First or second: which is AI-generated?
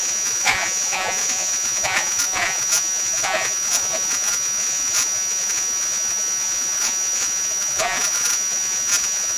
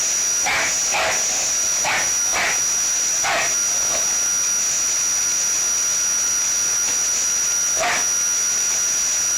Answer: first